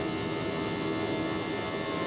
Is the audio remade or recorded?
recorded